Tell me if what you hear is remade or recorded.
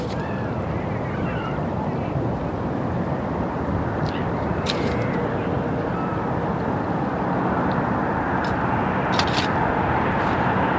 recorded